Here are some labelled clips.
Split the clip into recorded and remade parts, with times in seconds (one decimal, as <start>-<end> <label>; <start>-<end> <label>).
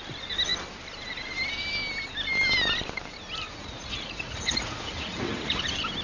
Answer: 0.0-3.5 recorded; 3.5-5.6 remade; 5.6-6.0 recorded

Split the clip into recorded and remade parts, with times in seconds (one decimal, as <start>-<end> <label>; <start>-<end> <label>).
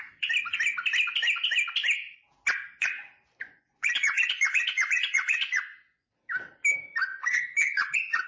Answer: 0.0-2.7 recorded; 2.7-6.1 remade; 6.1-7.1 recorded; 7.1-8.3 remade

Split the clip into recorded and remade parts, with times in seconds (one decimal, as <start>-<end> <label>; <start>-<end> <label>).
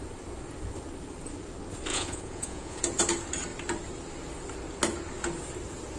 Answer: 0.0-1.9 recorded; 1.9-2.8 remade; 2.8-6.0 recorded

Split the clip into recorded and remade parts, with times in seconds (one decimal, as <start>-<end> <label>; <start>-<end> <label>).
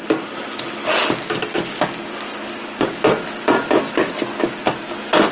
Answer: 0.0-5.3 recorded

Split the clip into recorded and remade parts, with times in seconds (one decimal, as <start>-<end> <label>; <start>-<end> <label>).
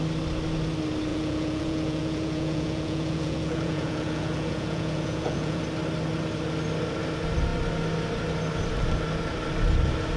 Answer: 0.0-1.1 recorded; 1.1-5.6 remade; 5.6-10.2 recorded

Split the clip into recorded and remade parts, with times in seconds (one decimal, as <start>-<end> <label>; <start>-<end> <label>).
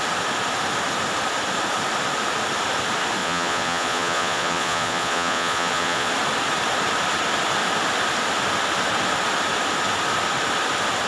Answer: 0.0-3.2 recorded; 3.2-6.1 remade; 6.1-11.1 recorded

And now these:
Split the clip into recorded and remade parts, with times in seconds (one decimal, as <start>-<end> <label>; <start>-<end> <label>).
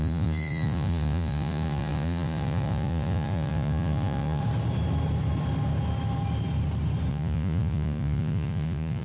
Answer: 0.0-4.4 remade; 4.4-7.1 recorded; 7.1-9.0 remade